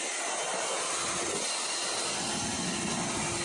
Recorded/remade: recorded